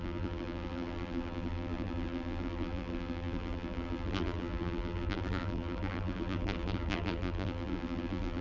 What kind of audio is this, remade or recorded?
remade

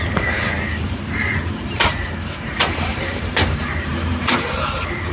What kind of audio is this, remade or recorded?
remade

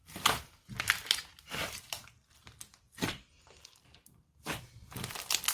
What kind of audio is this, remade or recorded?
remade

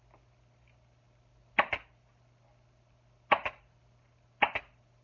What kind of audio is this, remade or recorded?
recorded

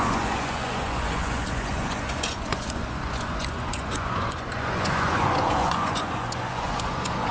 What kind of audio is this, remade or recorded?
remade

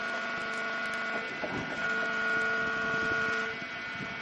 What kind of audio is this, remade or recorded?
recorded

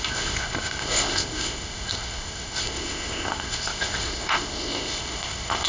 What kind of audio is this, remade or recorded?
remade